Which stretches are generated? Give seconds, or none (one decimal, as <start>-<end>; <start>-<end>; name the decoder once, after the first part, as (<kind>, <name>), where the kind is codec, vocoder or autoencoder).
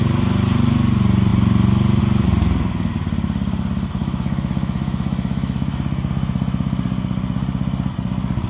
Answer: 4.0-5.7 (autoencoder, DAC-VAE)